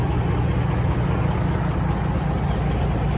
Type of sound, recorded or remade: recorded